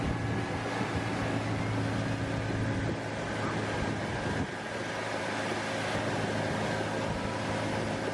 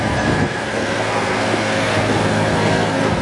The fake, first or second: second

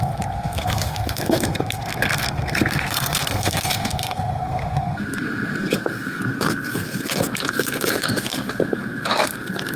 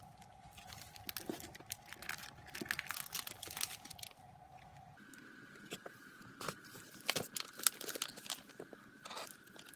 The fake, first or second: first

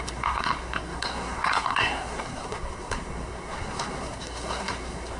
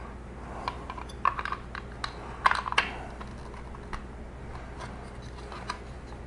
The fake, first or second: first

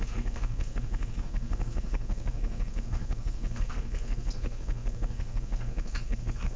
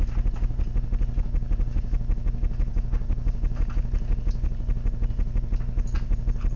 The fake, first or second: first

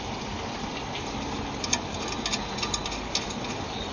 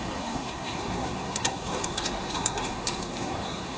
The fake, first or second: second